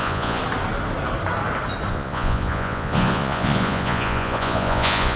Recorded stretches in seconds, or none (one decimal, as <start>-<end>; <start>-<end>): 0.4-1.9